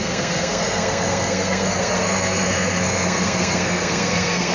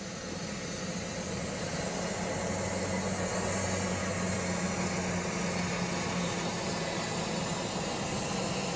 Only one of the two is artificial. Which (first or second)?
first